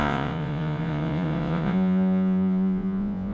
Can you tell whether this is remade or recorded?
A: remade